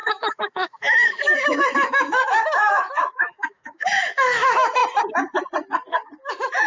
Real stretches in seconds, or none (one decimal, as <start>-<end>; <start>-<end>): 4.8-6.3